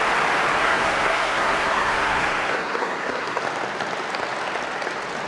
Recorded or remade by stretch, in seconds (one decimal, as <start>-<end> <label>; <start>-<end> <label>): 0.0-0.6 recorded; 0.6-3.4 remade; 3.4-5.3 recorded